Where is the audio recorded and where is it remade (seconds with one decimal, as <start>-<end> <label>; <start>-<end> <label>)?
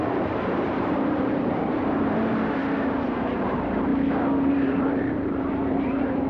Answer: 0.0-2.6 remade; 2.6-3.2 recorded; 3.2-3.9 remade; 3.9-4.5 recorded; 4.5-6.3 remade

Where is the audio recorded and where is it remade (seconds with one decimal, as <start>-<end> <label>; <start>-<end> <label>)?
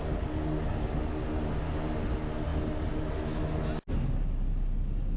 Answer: 0.0-5.2 recorded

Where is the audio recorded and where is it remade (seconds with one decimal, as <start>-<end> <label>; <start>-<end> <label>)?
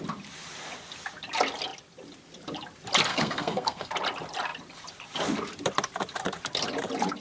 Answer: 0.0-3.1 recorded; 3.1-3.9 remade; 3.9-7.2 recorded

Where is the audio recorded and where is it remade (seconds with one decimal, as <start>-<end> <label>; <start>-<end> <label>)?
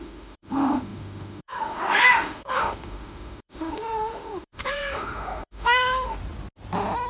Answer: 0.0-6.2 remade; 6.2-7.1 recorded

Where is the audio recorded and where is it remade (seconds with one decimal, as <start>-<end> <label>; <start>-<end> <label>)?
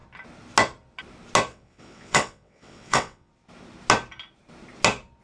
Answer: 0.0-1.5 recorded; 1.5-3.3 remade; 3.3-5.2 recorded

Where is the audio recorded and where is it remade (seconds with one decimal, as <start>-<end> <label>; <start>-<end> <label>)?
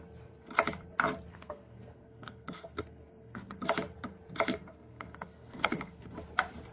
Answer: 0.0-1.3 recorded; 1.3-3.6 remade; 3.6-4.5 recorded; 4.5-6.1 remade; 6.1-6.7 recorded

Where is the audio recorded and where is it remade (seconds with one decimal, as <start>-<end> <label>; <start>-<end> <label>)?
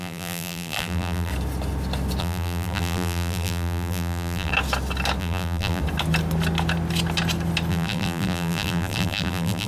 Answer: 0.0-1.3 remade; 1.3-2.2 recorded; 2.2-4.5 remade; 4.5-5.2 recorded; 5.2-5.8 remade; 5.8-7.7 recorded; 7.7-9.7 remade